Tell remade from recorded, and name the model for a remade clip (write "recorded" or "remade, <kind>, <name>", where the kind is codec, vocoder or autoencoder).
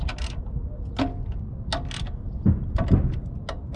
recorded